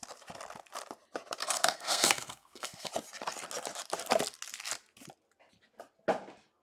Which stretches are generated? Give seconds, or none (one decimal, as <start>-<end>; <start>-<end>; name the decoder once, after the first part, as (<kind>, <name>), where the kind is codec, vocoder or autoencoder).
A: 1.4-2.9 (codec, SNAC)